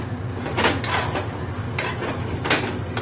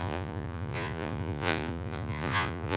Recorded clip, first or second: first